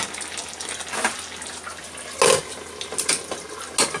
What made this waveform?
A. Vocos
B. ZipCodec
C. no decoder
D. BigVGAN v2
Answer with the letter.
C